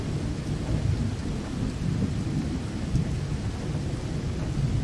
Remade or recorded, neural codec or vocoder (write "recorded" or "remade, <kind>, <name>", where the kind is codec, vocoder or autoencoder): recorded